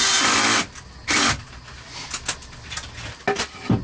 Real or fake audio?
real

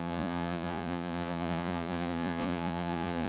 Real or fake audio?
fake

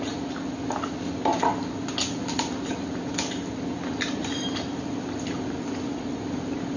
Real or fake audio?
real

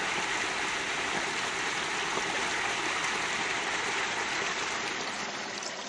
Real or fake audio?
real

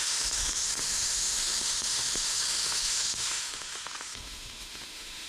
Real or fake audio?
fake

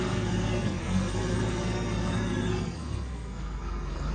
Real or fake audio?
fake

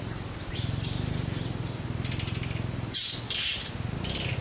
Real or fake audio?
real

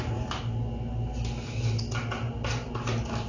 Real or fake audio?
real